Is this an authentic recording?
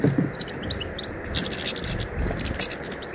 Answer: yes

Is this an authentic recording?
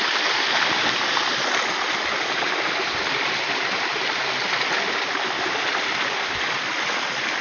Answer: yes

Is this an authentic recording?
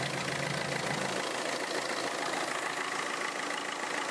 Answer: yes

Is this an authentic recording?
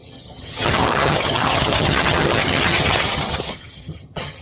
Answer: no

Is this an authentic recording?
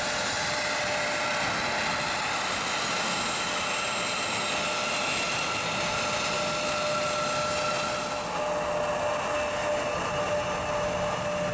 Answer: yes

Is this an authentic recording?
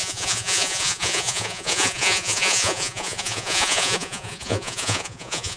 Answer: no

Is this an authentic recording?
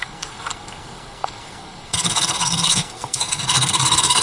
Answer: no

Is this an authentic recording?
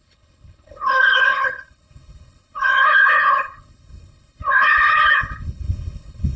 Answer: no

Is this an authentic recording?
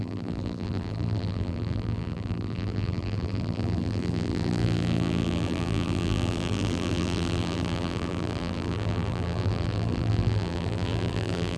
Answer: no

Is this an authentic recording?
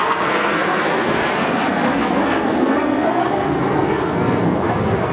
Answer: no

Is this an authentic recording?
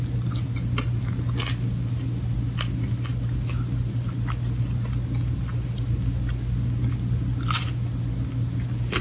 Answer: yes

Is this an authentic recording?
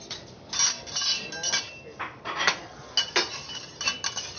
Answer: yes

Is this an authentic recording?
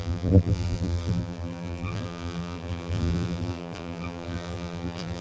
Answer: no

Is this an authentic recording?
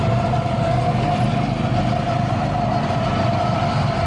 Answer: yes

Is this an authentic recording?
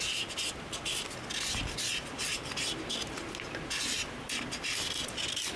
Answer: yes